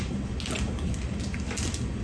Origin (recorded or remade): recorded